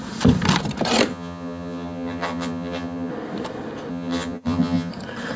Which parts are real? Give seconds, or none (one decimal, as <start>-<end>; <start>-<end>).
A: 0.0-1.1; 3.1-3.9; 4.9-5.4